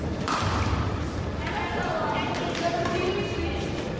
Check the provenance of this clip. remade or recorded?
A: recorded